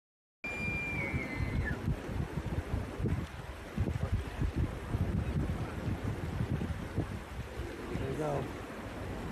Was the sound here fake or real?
real